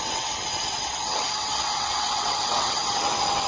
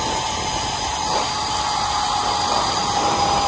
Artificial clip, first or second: first